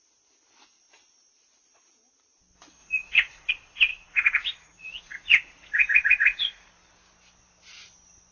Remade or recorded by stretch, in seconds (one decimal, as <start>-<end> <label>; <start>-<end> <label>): 0.0-2.8 recorded; 2.8-3.5 remade; 3.5-3.9 recorded; 3.9-6.7 remade; 6.7-8.3 recorded